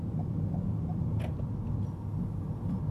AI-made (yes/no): no